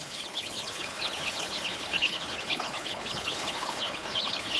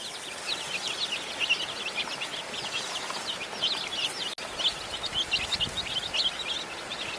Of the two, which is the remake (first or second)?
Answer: first